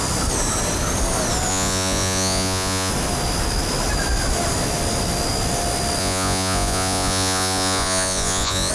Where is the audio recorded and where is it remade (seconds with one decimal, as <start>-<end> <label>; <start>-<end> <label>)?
0.0-1.5 recorded; 1.5-2.9 remade; 2.9-6.0 recorded; 6.0-8.7 remade